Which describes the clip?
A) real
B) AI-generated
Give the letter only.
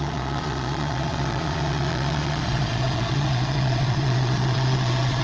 B